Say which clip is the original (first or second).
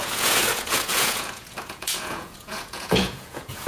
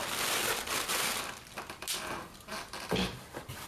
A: second